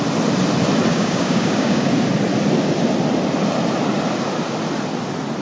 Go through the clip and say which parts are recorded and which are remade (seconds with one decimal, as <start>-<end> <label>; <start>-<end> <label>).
0.0-0.9 recorded; 0.9-1.9 remade; 1.9-5.4 recorded